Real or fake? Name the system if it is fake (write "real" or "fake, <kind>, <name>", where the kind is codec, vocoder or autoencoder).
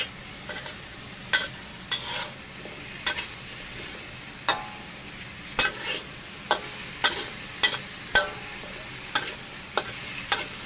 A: real